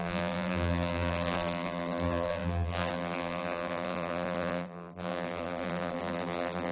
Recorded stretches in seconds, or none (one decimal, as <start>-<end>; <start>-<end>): none